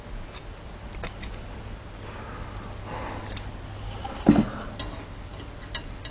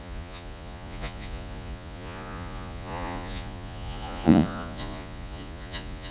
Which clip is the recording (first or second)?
first